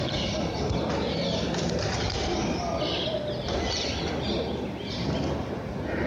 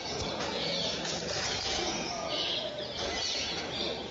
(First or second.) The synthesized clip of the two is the second